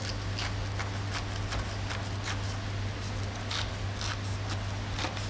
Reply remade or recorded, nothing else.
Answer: recorded